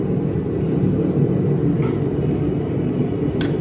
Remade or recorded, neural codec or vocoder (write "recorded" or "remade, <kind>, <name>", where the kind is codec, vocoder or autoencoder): recorded